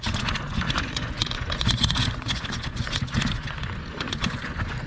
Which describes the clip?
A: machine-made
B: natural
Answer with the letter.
A